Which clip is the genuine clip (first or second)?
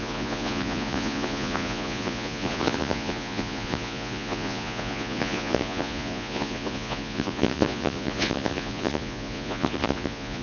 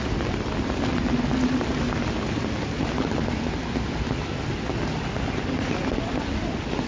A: second